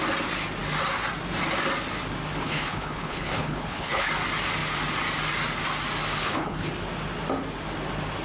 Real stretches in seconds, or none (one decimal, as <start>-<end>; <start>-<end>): 0.0-2.4; 4.1-6.2; 6.7-8.2